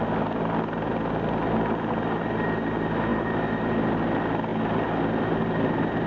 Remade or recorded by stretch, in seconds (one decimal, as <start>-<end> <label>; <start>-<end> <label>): 0.0-6.1 recorded